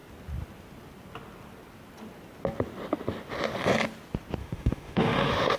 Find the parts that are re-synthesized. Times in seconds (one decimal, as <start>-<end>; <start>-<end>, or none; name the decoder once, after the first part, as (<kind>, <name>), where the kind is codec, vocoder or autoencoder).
4.4-5.6 (autoencoder, DAC-VAE)

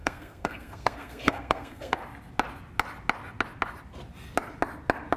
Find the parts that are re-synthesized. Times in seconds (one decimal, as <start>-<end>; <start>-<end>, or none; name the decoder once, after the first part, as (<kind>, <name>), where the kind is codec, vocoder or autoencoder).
0.0-2.0 (codec, SNAC)

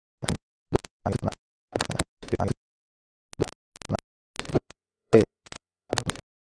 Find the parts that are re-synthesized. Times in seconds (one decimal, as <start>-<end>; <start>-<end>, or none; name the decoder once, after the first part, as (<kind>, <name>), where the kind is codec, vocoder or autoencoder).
4.5-5.9 (vocoder, Vocos)